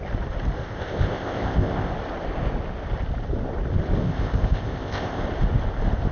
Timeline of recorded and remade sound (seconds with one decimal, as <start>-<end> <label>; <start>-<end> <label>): 0.0-0.6 recorded; 0.6-1.9 remade; 1.9-4.0 recorded; 4.0-5.2 remade; 5.2-6.1 recorded